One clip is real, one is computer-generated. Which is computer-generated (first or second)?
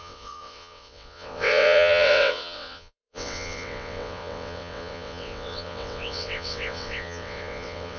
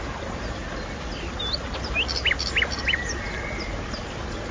first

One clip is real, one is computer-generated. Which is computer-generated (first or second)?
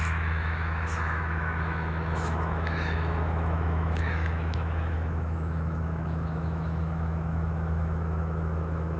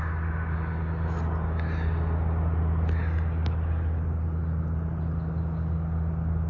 first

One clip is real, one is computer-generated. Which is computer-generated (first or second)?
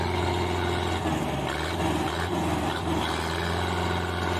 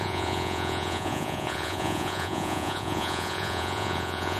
second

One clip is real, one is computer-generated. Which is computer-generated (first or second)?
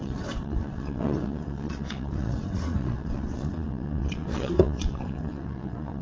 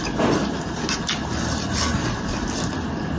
first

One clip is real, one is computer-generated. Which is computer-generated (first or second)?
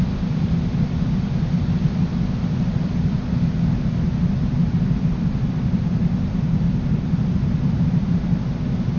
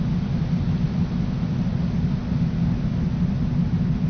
first